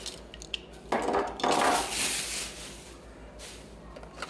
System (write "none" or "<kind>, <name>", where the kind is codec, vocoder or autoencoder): none